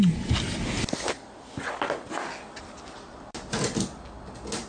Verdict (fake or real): real